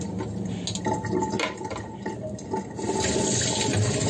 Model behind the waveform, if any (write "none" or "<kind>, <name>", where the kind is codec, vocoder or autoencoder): none